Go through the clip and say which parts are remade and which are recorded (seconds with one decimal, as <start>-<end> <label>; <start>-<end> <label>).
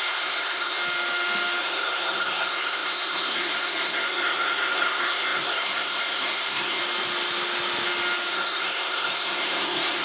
0.0-0.8 remade; 0.8-1.6 recorded; 1.6-6.8 remade; 6.8-8.3 recorded; 8.3-10.0 remade